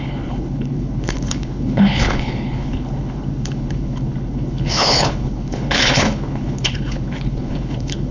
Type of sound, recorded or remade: remade